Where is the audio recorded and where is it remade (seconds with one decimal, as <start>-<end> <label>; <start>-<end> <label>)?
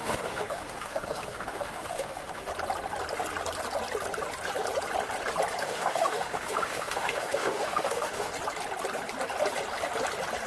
0.0-2.5 remade; 2.5-5.6 recorded; 5.6-8.3 remade; 8.3-10.5 recorded